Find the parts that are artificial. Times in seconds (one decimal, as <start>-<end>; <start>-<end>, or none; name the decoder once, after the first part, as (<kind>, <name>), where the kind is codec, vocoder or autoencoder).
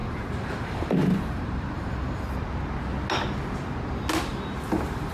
0.0-2.2 (vocoder, BigVGAN v2); 4.3-5.1